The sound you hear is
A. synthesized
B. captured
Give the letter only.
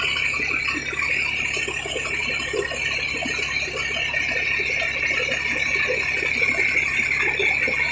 B